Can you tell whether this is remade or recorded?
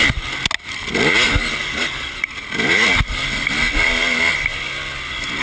recorded